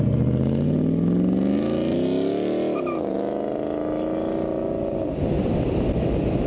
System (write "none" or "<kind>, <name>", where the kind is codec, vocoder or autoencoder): none